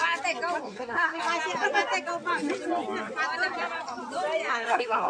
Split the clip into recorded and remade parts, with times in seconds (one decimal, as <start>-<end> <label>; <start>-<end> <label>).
0.0-0.6 recorded; 0.6-1.2 remade; 1.2-4.5 recorded; 4.5-5.1 remade